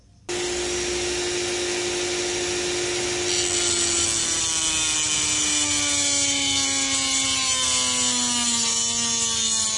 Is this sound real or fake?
real